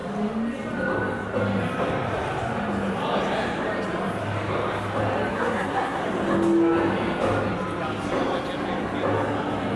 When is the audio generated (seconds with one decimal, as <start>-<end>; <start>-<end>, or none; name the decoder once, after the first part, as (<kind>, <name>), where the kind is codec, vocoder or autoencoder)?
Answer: 5.3-6.0 (codec, SNAC)